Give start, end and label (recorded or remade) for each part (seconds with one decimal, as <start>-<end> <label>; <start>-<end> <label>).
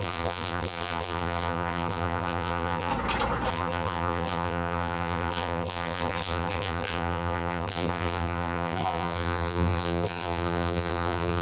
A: 0.0-2.9 remade; 2.9-3.5 recorded; 3.5-11.4 remade